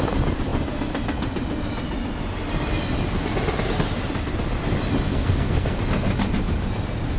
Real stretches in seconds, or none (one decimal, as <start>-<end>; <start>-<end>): 0.0-5.1; 5.8-7.2